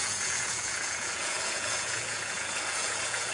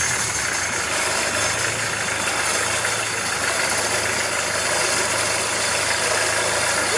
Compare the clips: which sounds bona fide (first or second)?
second